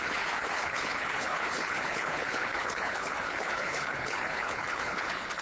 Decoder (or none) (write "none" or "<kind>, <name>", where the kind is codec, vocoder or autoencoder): codec, HILCodec